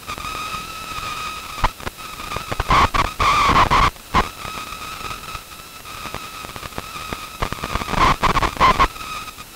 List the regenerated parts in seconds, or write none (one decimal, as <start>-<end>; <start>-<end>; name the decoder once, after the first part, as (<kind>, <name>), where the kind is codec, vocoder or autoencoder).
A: 0.5-1.4 (autoencoder, DAC-VAE)

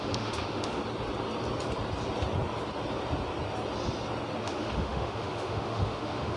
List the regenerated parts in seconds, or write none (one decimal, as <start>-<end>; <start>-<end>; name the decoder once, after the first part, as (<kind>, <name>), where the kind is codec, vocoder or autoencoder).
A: 0.0-0.8 (autoencoder, DAC-VAE); 4.4-6.4

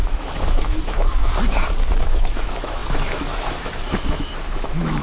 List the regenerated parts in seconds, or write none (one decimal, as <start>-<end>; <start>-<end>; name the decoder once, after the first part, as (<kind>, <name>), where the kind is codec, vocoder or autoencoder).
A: 0.0-1.2 (autoencoder, DAC-VAE); 1.9-5.0